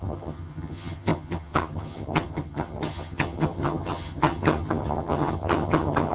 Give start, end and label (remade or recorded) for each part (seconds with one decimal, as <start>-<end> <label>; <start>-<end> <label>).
0.0-6.1 remade